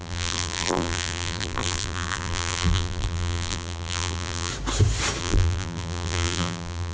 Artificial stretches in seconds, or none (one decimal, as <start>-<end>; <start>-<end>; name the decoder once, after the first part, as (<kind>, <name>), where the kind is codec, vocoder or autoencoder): 0.0-4.5 (vocoder, BigVGAN v2); 5.2-6.9